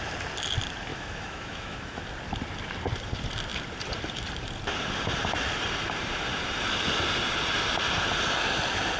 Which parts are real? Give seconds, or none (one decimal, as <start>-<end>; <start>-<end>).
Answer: 0.0-0.9; 2.0-9.0